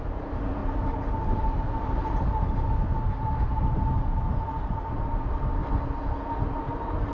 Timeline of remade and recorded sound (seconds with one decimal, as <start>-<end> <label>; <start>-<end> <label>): 0.0-0.6 remade; 0.6-4.9 recorded; 4.9-5.6 remade; 5.6-6.4 recorded; 6.4-7.1 remade